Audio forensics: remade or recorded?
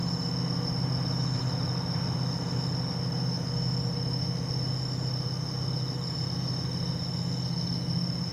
recorded